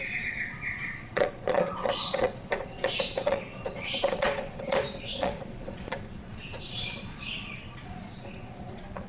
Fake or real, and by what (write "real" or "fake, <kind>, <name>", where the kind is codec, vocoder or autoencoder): fake, vocoder, Vocos